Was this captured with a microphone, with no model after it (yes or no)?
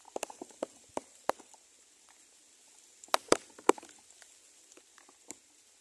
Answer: yes